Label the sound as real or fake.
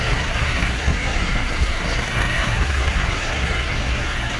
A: fake